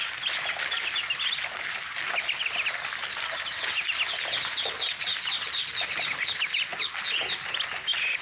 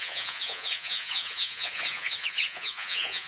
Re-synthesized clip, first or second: second